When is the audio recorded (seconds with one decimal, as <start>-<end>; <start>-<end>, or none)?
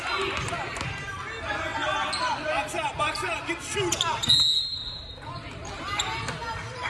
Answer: 0.0-6.9